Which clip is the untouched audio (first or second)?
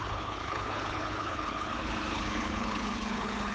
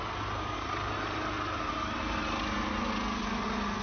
second